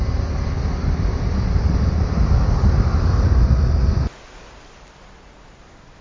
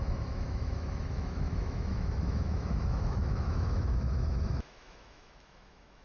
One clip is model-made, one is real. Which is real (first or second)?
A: first